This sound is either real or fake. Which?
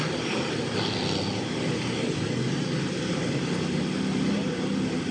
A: real